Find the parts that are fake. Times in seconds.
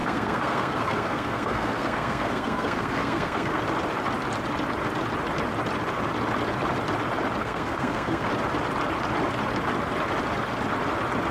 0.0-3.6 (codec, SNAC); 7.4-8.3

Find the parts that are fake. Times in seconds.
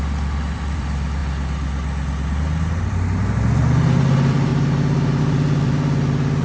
0.0-1.2 (vocoder, BigVGAN v2); 2.8-4.5; 5.2-6.4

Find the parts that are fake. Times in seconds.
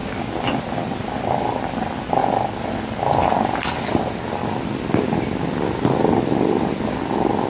none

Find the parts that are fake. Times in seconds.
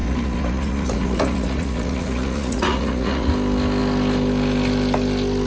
0.0-3.3 (vocoder, Vocos)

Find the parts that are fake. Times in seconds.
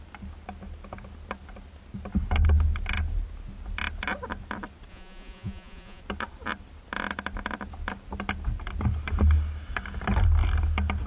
4.9-6.0 (vocoder, Vocos)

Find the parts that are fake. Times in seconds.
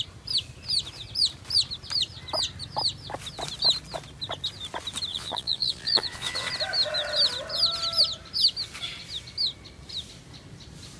5.1-6.5 (vocoder, Vocos)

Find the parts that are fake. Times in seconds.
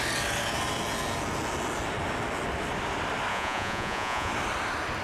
3.3-4.3 (vocoder, Vocos)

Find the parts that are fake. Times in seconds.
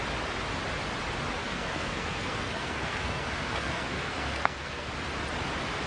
1.4-4.9 (codec, SNAC)